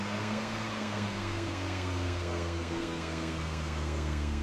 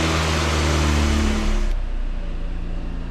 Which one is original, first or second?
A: second